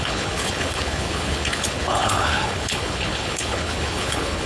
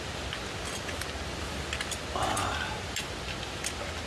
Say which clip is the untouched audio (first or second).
second